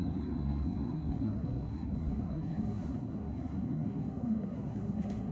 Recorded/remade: remade